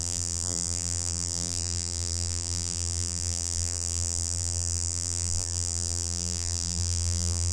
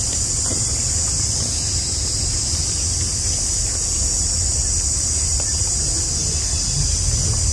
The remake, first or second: first